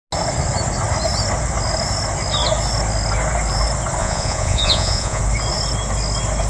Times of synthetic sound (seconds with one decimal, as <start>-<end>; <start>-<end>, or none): 4.0-5.2